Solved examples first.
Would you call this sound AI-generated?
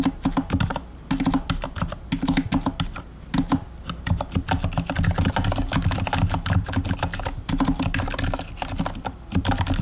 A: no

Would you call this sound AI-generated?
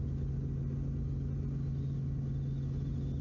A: no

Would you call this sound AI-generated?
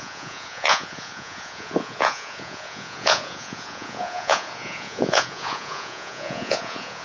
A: yes